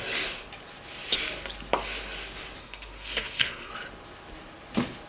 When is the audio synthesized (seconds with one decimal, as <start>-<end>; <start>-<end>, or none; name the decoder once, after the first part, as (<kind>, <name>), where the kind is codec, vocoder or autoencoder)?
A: 2.6-3.7 (codec, SNAC)